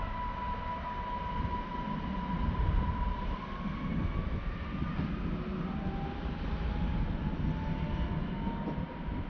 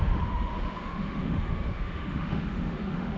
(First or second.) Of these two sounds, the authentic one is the first